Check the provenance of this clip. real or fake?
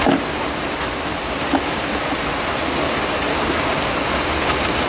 real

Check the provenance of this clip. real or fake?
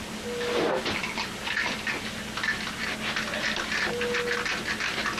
real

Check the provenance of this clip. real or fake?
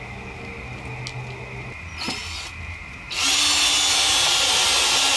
real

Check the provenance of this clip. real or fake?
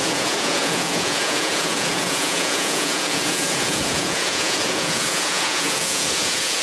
fake